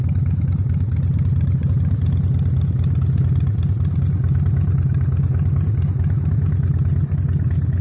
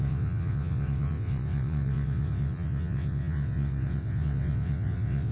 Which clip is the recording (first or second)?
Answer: first